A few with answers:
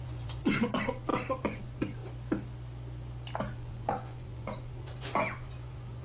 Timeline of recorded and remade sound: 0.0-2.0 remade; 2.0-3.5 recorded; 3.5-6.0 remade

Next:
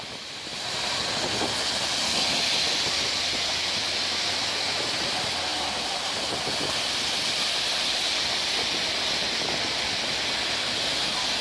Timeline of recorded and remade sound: 0.0-11.4 recorded

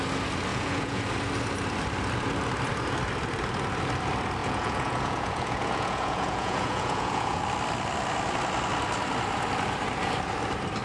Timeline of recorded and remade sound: 0.0-0.5 recorded; 0.5-1.0 remade; 1.0-4.4 recorded; 4.4-7.4 remade; 7.4-10.8 recorded